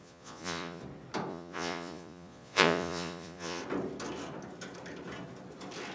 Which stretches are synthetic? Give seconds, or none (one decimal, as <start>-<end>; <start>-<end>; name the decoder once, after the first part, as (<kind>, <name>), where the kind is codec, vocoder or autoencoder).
0.0-0.8 (vocoder, Vocos); 1.3-3.6